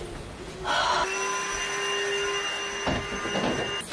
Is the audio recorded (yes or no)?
yes